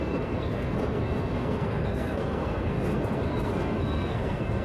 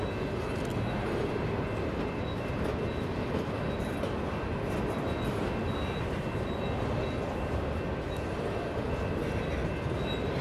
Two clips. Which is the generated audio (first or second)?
first